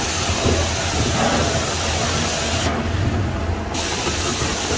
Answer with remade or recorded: recorded